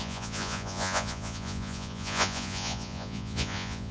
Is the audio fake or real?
fake